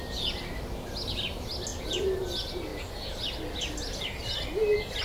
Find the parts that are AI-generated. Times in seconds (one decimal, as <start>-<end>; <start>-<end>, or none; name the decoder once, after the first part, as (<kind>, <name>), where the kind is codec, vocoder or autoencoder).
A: none